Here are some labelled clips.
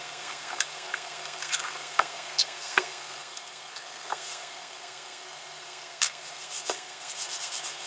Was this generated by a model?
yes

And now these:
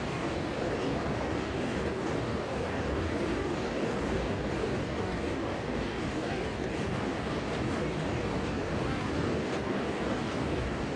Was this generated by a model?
yes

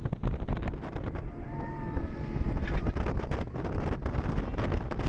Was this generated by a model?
yes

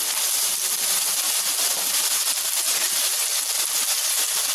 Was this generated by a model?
no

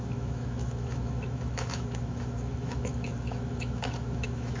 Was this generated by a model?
yes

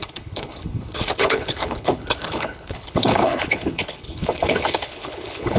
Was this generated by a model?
yes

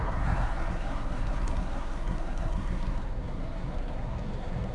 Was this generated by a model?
yes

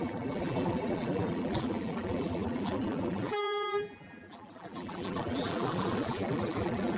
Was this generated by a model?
yes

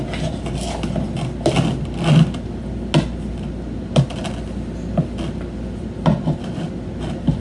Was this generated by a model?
no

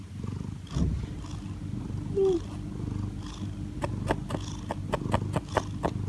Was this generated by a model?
no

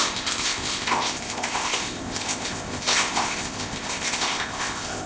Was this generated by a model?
yes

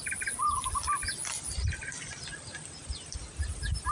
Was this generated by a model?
no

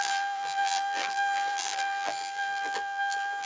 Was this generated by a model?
yes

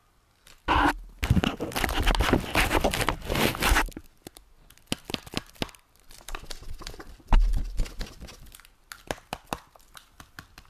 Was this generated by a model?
no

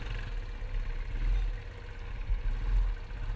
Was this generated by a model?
no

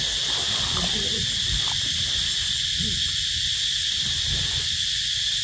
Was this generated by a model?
yes